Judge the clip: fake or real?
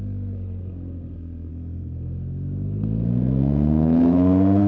fake